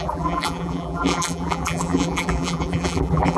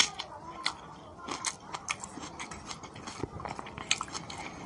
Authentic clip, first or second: second